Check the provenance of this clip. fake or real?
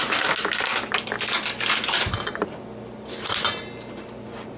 real